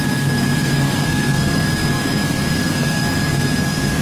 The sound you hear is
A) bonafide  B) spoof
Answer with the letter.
B